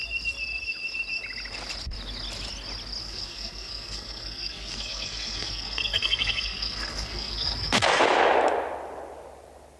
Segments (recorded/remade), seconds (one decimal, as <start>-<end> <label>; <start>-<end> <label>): 0.0-3.0 recorded; 3.0-8.0 remade; 8.0-9.8 recorded